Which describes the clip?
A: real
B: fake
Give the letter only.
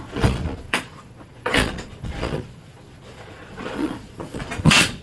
B